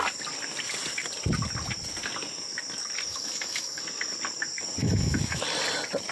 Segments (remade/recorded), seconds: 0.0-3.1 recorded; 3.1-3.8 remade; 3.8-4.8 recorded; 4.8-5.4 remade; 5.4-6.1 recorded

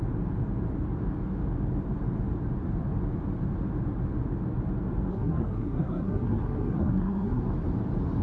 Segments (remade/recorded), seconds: 0.0-5.1 recorded; 5.1-7.4 remade; 7.4-8.2 recorded

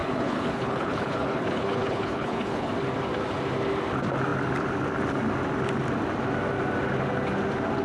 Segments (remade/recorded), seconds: 0.0-2.7 remade; 2.7-7.8 recorded

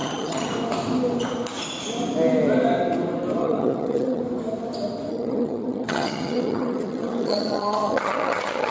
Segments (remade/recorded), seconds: 0.0-0.5 remade; 0.5-3.4 recorded; 3.4-4.2 remade; 4.2-5.1 recorded; 5.1-8.7 remade

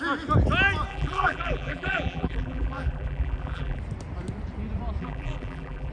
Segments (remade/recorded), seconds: 0.0-0.9 recorded; 0.9-3.8 remade; 3.8-5.0 recorded; 5.0-5.9 remade

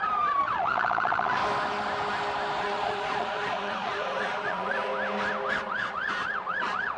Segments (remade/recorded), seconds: 0.0-1.4 remade; 1.4-2.6 recorded; 2.6-4.9 remade; 4.9-5.5 recorded; 5.5-7.0 remade

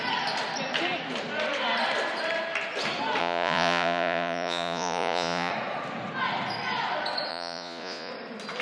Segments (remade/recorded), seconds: 0.0-3.2 recorded; 3.2-5.5 remade; 5.5-7.3 recorded; 7.3-8.1 remade; 8.1-8.6 recorded

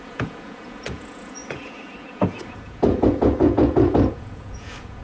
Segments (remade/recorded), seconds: 0.0-5.0 remade